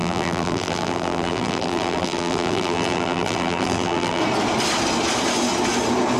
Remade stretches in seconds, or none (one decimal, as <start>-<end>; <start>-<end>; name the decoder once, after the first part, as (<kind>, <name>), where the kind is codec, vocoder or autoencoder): 0.0-4.2 (vocoder, BigVGAN v2)